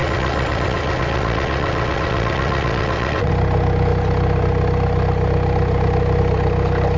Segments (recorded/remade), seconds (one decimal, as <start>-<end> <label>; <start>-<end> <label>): 0.0-3.3 remade; 3.3-7.0 recorded